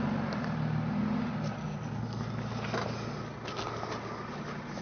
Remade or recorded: recorded